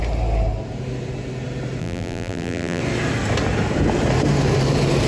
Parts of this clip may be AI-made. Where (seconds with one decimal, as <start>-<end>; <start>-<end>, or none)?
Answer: 1.8-2.8